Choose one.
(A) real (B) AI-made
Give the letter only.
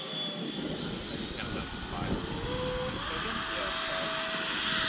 A